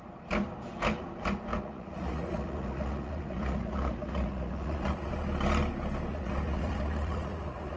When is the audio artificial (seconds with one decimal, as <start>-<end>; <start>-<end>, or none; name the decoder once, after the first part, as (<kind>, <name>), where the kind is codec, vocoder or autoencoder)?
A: 1.5-5.1 (vocoder, Vocos); 6.1-7.8